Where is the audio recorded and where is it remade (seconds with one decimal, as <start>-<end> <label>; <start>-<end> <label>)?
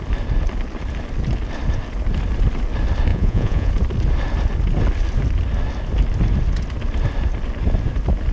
0.0-3.1 recorded; 3.1-3.7 remade; 3.7-8.3 recorded